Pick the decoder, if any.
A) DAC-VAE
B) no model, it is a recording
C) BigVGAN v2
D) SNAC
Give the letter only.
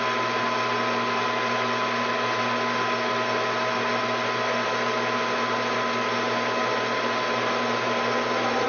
B